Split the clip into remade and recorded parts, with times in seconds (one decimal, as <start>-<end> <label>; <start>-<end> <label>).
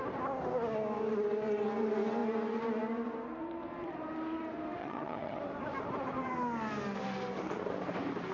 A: 0.0-4.8 recorded; 4.8-5.4 remade; 5.4-8.3 recorded